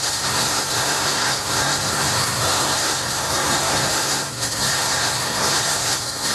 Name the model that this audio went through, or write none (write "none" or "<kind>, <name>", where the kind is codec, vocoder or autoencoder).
codec, SNAC